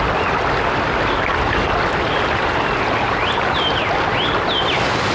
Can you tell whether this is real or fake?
real